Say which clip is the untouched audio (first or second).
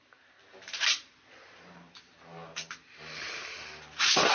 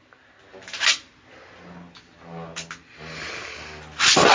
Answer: second